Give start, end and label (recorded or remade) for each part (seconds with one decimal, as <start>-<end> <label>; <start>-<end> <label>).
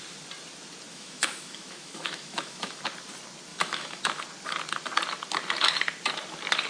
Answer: 0.0-0.9 recorded; 0.9-2.8 remade; 2.8-3.5 recorded; 3.5-4.0 remade; 4.0-6.7 recorded